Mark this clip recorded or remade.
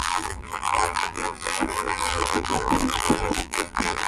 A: remade